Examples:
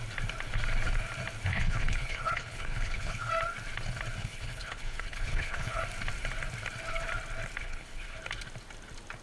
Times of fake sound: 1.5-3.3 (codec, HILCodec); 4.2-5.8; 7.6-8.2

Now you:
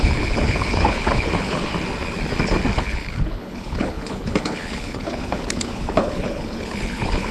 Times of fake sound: 0.0-1.7 (codec, HILCodec); 2.8-7.3

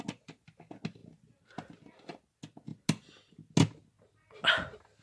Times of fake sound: none

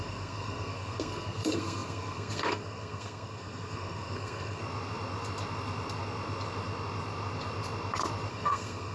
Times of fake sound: 0.0-4.6 (codec, SNAC); 8.3-8.9

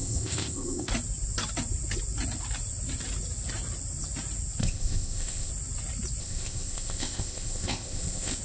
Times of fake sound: 0.0-0.9 (codec, ZipCodec); 4.6-5.5; 6.2-8.4

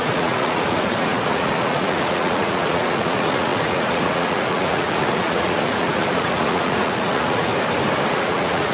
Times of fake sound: 0.0-7.5 (vocoder, Vocos); 8.1-8.7

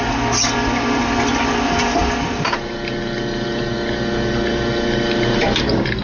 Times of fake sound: none

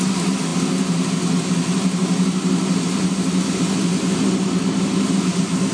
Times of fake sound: none